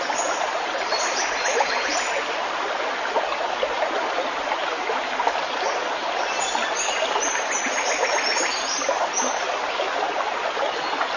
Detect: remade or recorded recorded